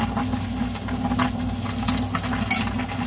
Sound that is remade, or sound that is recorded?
recorded